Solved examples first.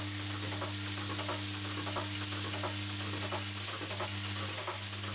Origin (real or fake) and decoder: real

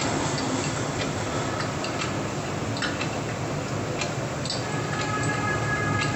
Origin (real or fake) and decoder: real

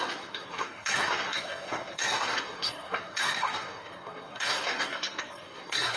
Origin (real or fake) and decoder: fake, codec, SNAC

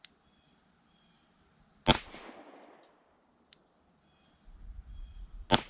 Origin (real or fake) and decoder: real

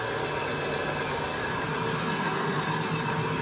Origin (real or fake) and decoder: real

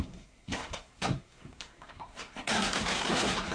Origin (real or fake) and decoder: fake, codec, SNAC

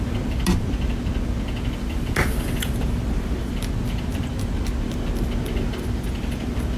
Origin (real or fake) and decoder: real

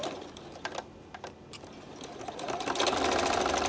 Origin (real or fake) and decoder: real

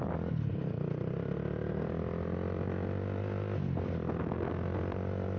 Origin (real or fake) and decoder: real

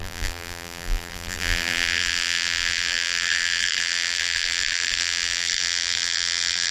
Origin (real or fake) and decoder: fake, vocoder, BigVGAN v2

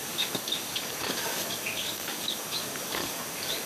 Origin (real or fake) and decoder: fake, codec, DAC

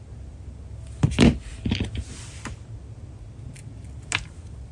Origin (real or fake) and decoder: real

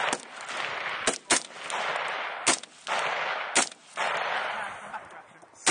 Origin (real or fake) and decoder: real